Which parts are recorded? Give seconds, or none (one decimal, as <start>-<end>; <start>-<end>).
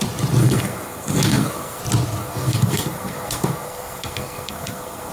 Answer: 0.0-0.4; 1.8-2.2